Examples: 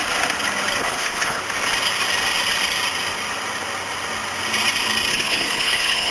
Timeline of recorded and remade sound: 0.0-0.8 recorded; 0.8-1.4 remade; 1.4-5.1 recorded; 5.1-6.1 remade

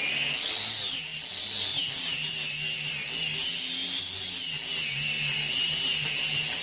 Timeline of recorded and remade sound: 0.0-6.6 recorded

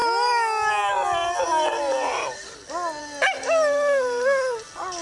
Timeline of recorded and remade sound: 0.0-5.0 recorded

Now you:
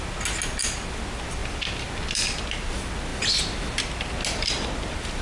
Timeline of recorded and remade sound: 0.0-5.2 recorded

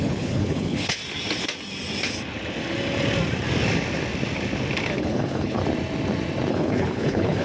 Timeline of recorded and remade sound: 0.0-1.0 remade; 1.0-5.0 recorded; 5.0-5.6 remade; 5.6-6.5 recorded; 6.5-7.4 remade